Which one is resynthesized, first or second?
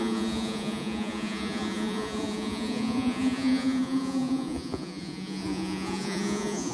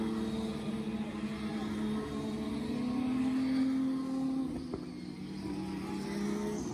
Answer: first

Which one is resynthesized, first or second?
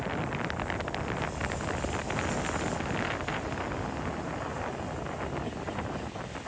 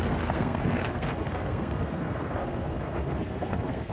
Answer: second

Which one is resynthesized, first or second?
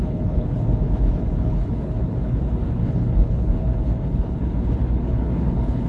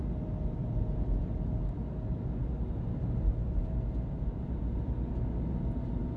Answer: first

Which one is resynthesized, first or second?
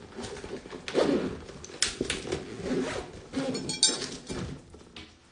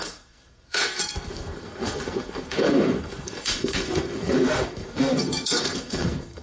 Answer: second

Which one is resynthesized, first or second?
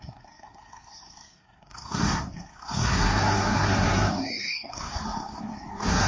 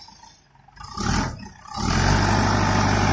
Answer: first